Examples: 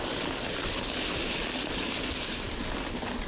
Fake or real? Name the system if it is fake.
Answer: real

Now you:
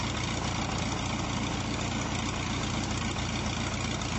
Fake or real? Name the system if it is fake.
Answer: real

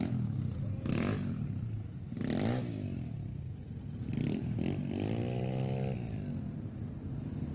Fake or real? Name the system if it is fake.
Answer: real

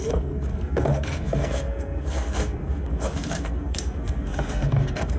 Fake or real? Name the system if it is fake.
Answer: fake, codec, SNAC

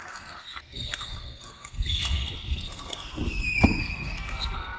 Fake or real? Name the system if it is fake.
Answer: fake, codec, SNAC